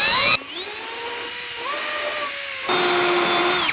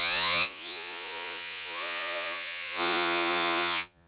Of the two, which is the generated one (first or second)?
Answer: second